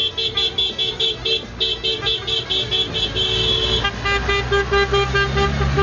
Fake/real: real